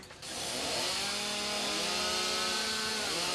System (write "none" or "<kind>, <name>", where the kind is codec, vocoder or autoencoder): none